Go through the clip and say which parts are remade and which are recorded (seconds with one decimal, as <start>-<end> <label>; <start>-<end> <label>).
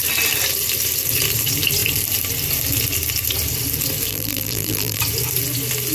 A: 0.0-4.1 recorded; 4.1-5.0 remade; 5.0-5.9 recorded